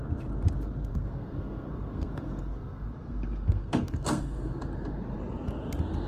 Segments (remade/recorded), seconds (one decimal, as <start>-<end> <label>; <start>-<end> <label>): 0.0-0.9 recorded; 0.9-4.6 remade; 4.6-6.1 recorded